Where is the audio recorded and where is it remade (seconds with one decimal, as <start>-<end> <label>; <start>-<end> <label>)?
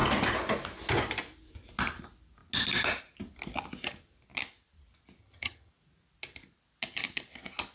0.0-5.2 recorded; 5.2-5.7 remade; 5.7-7.7 recorded